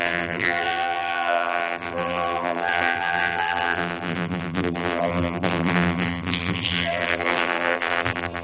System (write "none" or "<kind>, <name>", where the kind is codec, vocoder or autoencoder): vocoder, BigVGAN v2